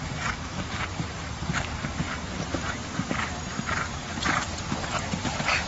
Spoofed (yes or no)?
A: yes